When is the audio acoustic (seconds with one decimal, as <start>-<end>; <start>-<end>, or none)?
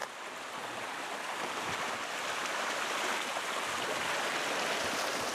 1.3-5.3